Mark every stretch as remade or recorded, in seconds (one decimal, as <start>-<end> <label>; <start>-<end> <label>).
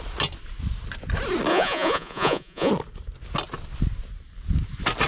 0.0-1.5 recorded; 1.5-2.7 remade; 2.7-5.1 recorded